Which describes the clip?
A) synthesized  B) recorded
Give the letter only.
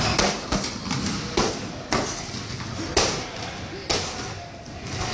B